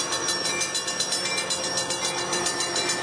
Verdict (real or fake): real